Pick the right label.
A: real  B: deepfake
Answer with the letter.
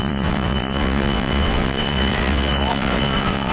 B